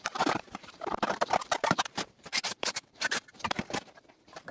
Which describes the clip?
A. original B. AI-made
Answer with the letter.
B